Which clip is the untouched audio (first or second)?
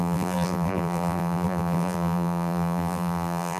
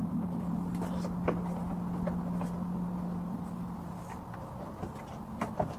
second